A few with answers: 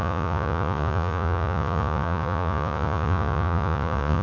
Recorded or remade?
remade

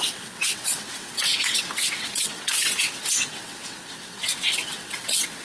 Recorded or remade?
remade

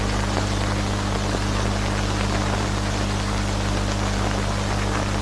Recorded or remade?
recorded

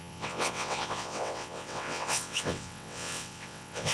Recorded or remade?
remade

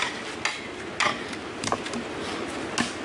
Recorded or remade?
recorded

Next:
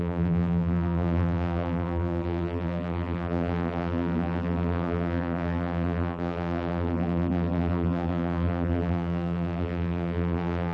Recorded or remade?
remade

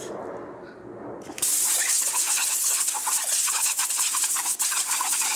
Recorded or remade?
recorded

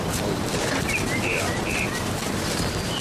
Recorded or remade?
recorded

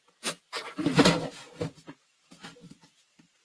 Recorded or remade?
recorded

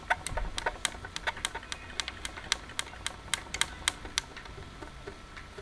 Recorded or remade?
recorded